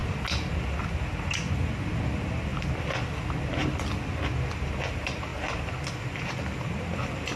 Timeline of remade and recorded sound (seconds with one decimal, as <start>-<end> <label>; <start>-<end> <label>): 0.0-7.4 recorded